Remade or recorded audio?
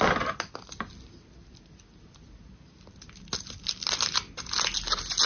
recorded